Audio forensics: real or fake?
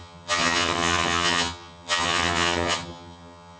fake